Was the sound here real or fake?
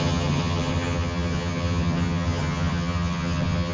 fake